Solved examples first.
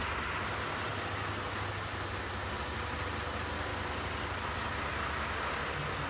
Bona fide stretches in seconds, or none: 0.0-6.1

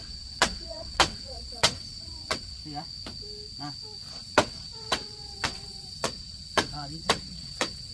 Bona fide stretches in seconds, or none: 2.6-4.1

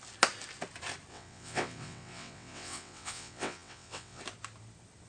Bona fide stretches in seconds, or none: 0.0-1.1; 4.2-5.1